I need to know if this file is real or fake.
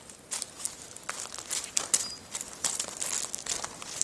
real